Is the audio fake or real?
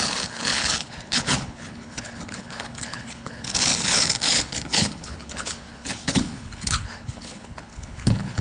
fake